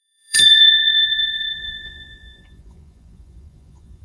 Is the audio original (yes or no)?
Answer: no